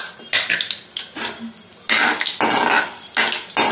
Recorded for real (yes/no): yes